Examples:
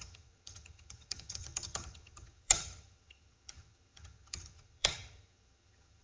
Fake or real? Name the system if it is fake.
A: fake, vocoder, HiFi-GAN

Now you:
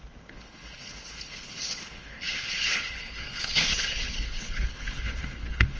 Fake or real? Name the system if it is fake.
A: fake, codec, HILCodec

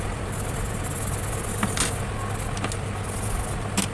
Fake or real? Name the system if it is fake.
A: real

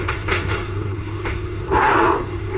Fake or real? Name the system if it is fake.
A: fake, codec, SNAC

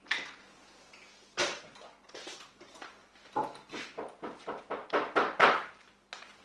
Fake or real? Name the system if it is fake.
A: real